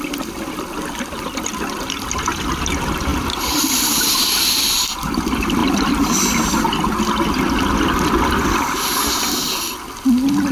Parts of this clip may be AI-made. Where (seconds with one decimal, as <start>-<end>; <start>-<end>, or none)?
none